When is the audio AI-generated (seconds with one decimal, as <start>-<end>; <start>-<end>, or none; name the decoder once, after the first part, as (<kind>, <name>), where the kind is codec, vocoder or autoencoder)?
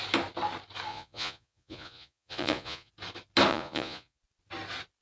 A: 0.9-2.9 (vocoder, Vocos); 3.5-4.2